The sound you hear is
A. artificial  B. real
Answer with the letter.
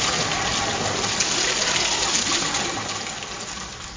B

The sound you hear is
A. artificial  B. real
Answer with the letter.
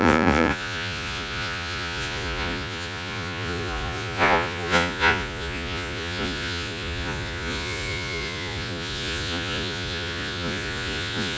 A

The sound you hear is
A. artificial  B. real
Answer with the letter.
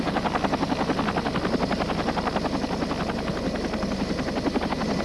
B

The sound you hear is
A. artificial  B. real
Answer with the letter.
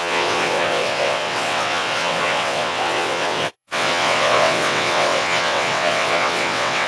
A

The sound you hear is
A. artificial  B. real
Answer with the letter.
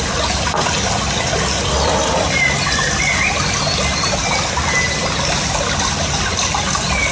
B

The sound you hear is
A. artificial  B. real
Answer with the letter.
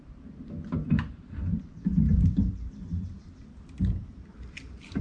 B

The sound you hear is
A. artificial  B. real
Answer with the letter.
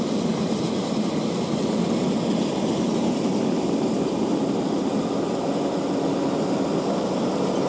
B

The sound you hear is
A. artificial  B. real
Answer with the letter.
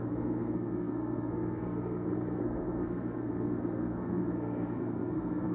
A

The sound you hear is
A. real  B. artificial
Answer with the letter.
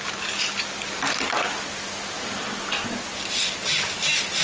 A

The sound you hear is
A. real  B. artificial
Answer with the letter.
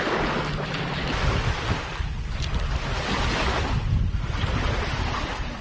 A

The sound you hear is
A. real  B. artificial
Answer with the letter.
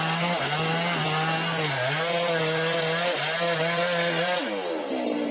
A